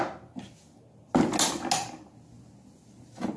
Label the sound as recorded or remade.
recorded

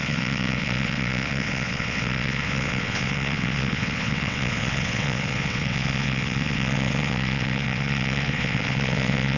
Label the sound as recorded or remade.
remade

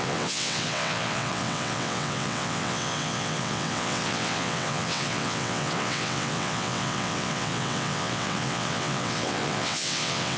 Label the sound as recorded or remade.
remade